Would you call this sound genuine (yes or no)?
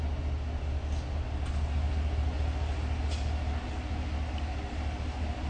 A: yes